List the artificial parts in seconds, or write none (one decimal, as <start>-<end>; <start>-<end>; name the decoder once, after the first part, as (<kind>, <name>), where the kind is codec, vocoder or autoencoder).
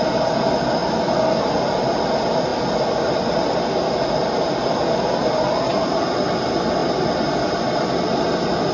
none